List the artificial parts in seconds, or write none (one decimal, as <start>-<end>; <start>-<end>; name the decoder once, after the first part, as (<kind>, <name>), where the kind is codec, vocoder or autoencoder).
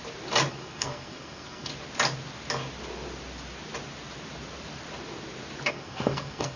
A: 0.5-1.7 (codec, SNAC); 5.7-6.6